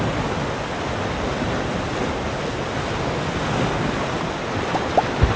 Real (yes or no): yes